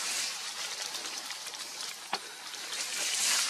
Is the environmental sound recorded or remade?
recorded